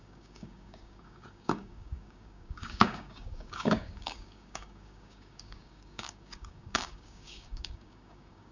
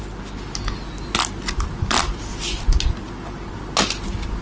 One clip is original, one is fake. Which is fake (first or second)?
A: first